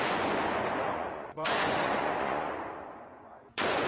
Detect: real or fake fake